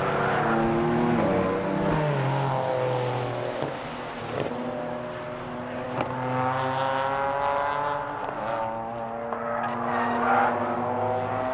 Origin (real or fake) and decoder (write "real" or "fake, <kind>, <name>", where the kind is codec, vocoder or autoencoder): real